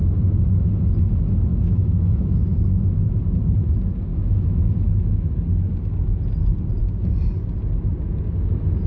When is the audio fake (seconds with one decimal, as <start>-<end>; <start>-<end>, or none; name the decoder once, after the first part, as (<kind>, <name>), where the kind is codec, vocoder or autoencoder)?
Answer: 1.5-3.1 (autoencoder, DAC-VAE); 4.1-5.3